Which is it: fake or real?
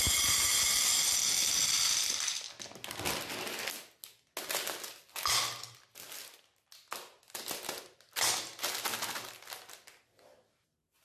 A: real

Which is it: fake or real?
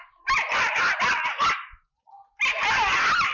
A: real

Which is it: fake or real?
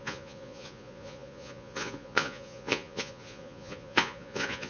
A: fake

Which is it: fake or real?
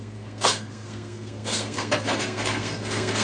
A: fake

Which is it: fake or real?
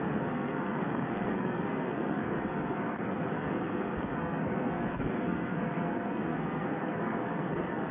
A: fake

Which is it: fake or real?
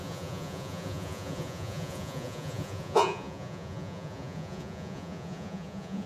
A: fake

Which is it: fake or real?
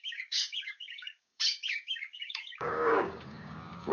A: fake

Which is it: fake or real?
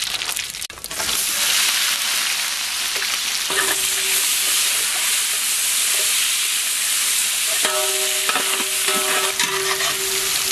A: real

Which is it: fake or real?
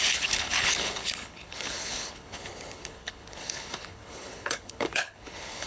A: fake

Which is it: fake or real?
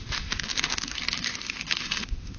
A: fake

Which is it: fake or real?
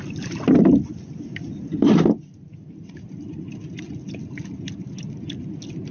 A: real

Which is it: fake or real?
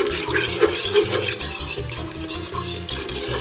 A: real